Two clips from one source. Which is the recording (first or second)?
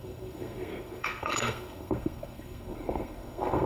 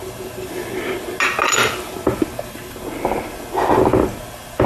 second